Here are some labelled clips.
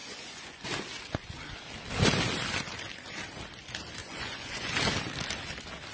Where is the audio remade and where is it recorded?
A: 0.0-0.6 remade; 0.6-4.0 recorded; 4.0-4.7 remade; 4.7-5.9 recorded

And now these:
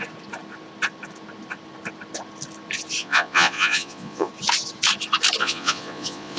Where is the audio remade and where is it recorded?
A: 0.0-3.0 recorded; 3.0-4.3 remade; 4.3-5.4 recorded; 5.4-6.4 remade

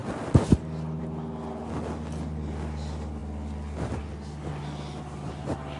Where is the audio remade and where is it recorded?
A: 0.0-5.8 recorded

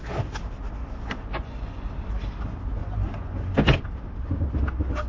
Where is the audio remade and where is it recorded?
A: 0.0-0.8 recorded; 0.8-1.9 remade; 1.9-2.8 recorded; 2.8-3.5 remade; 3.5-5.1 recorded

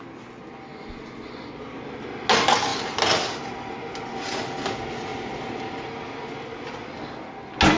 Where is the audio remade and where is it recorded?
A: 0.0-0.7 recorded; 0.7-1.5 remade; 1.5-7.8 recorded

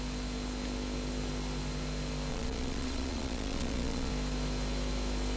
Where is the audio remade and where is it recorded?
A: 0.0-2.3 recorded; 2.3-4.1 remade; 4.1-5.4 recorded